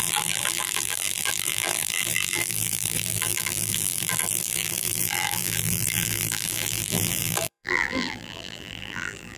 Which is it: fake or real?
fake